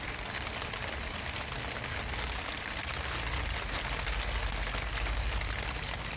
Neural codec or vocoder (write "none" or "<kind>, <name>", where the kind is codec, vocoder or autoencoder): none